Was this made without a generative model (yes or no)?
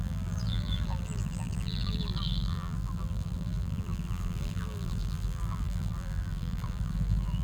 no